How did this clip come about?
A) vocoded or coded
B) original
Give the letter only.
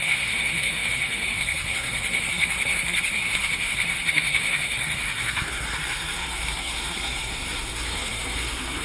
A